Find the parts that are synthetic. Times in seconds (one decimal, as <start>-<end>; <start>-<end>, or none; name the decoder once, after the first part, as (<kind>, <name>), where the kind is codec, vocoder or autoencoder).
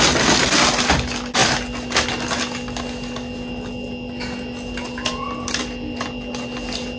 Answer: none